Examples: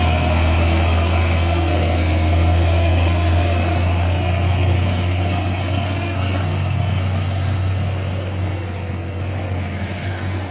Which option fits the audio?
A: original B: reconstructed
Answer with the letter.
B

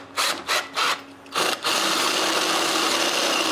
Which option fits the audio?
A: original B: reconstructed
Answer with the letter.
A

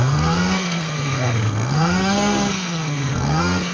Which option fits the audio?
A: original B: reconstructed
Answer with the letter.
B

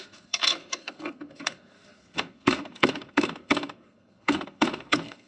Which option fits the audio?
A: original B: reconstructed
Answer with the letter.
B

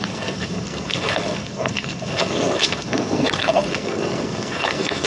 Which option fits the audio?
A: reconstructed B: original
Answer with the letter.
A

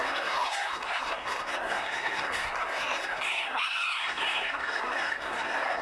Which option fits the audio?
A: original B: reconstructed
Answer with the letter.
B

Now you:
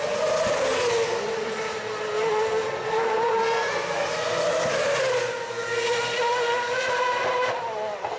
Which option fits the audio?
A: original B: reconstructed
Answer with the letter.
A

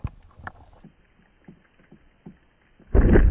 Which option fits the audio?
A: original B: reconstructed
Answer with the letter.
A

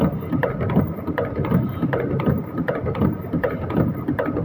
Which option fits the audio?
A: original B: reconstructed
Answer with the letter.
A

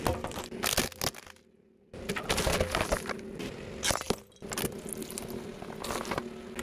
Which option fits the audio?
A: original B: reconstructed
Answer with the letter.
A